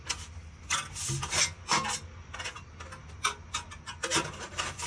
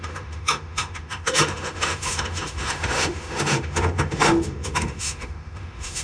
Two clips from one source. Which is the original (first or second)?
first